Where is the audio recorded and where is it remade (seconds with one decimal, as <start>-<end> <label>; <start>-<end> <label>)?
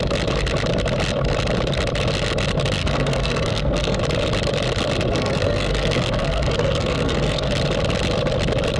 0.0-2.8 recorded; 2.8-4.0 remade; 4.0-5.1 recorded; 5.1-7.5 remade; 7.5-8.8 recorded